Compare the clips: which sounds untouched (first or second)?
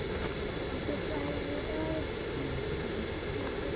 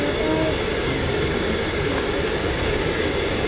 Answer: first